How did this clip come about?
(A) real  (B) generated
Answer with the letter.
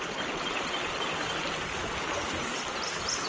A